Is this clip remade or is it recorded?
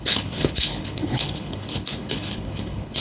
remade